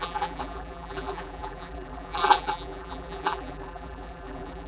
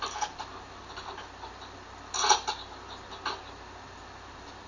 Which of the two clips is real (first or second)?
second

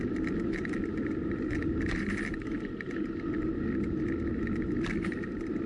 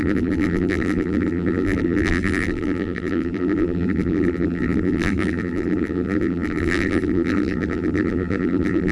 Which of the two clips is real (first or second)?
first